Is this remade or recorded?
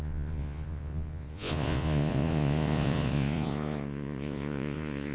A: remade